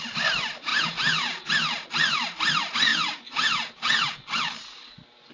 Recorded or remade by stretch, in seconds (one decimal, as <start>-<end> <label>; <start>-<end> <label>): 0.0-0.7 recorded; 0.7-1.5 remade; 1.5-2.9 recorded; 2.9-4.2 remade; 4.2-5.3 recorded